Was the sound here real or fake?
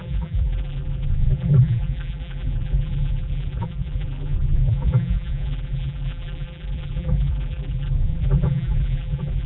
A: fake